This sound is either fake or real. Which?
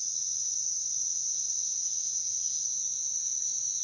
real